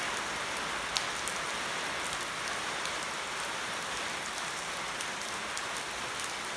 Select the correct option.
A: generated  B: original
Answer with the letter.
B